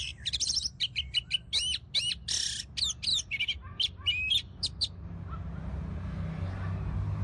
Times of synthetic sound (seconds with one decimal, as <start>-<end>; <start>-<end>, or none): none